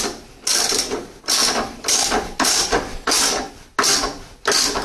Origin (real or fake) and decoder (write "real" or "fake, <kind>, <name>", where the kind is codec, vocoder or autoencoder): real